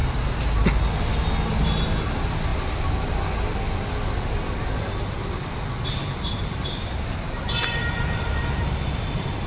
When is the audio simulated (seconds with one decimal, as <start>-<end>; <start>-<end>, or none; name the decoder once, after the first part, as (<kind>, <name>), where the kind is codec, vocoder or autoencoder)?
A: 6.0-9.5 (vocoder, BigVGAN v2)